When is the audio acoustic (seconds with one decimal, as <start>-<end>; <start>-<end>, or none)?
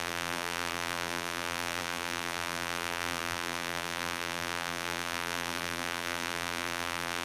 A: none